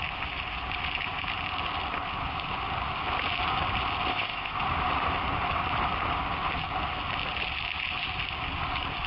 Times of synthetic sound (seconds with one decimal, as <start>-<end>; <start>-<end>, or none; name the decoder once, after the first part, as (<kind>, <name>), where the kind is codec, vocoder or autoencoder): 4.1-4.6 (codec, ZipCodec)